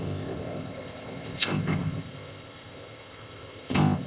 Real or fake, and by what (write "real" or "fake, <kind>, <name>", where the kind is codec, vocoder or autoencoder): fake, codec, ZipCodec